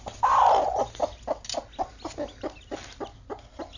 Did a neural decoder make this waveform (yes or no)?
no